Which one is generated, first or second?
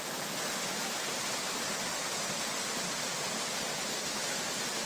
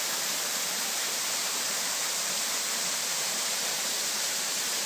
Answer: second